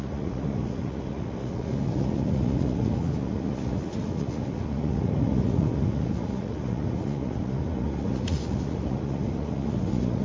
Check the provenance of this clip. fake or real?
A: fake